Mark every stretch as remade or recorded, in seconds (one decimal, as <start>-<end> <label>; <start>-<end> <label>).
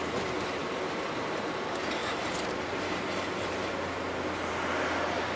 0.0-0.6 recorded; 0.6-1.6 remade; 1.6-5.4 recorded